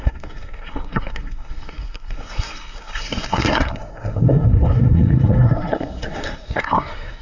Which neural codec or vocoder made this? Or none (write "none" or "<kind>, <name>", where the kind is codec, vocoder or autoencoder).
codec, SNAC